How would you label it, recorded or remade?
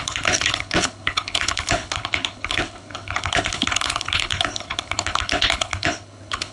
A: remade